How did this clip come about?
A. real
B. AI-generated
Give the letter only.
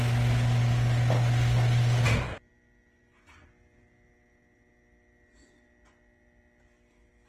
A